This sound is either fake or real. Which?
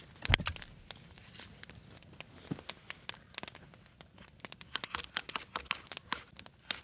real